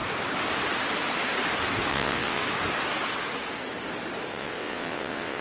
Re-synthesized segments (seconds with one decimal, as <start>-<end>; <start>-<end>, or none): 1.9-2.4; 4.3-5.4